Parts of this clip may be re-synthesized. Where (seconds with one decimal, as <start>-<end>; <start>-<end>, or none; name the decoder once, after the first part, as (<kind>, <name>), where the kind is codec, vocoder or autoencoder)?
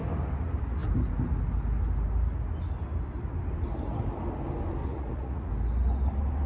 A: 4.8-5.5 (vocoder, Vocos)